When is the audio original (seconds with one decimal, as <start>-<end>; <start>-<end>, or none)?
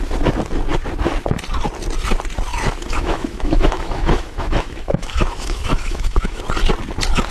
0.0-2.9; 6.4-7.3